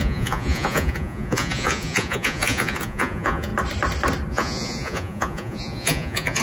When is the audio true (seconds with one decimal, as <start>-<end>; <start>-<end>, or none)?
3.5-4.3